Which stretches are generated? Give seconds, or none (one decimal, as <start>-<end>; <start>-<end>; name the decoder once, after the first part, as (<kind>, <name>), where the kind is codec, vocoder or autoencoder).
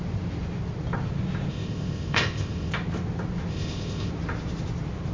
1.5-2.7 (codec, ZipCodec); 3.5-4.1